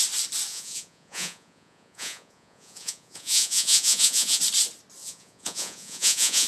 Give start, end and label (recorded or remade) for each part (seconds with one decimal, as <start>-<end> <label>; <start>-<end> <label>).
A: 0.0-0.5 recorded; 0.5-4.4 remade; 4.4-5.0 recorded; 5.0-6.5 remade